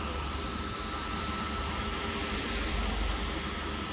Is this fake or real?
fake